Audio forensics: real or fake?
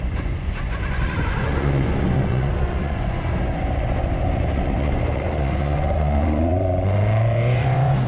fake